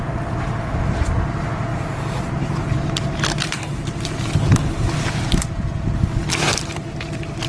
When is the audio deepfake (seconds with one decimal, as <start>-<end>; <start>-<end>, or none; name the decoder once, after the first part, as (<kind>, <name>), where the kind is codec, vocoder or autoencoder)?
1.7-4.0 (vocoder, BigVGAN v2)